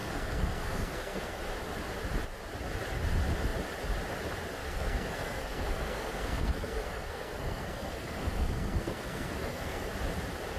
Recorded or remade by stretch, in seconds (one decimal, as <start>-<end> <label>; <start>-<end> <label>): 0.0-1.4 remade; 1.4-4.6 recorded; 4.6-9.9 remade; 9.9-10.6 recorded